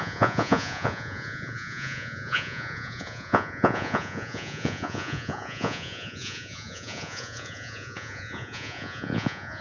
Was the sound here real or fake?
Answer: fake